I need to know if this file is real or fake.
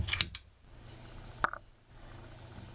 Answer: real